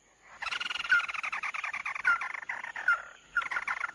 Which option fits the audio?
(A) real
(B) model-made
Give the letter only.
A